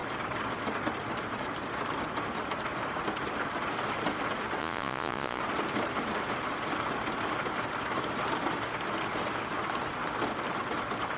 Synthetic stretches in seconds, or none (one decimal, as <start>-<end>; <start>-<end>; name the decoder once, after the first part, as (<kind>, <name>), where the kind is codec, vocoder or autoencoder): 4.6-5.4 (vocoder, Vocos)